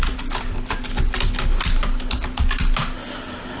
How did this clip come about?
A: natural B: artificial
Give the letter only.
A